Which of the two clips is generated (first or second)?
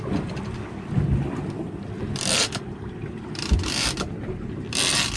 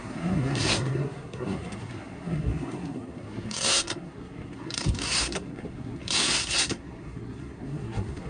second